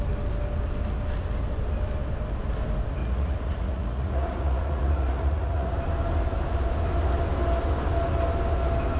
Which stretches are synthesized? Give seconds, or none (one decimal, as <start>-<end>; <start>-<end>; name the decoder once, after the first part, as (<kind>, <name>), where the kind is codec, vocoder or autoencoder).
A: 3.0-5.7 (vocoder, Vocos)

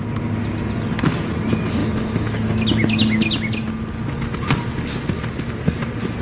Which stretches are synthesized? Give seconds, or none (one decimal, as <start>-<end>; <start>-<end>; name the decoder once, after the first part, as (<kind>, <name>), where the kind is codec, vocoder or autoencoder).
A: none

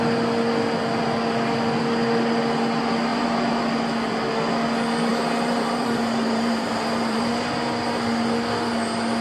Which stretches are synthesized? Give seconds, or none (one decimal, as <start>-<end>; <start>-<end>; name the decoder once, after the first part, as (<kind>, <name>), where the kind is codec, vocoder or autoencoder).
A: 3.1-3.6 (vocoder, BigVGAN v2); 5.1-7.3

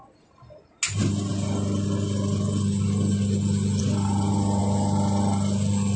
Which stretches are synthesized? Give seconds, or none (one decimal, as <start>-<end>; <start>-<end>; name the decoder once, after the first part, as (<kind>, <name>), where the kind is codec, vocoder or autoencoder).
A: none

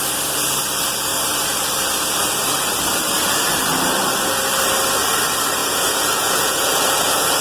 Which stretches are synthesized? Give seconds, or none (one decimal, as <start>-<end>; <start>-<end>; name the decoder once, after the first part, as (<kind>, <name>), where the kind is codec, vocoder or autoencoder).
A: 5.6-7.4 (vocoder, Vocos)

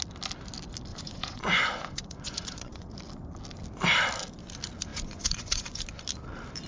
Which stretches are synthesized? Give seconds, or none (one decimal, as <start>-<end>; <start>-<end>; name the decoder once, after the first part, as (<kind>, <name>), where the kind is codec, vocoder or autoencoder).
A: 0.9-2.9 (vocoder, Vocos); 4.9-5.8